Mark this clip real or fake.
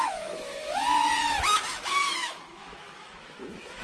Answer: fake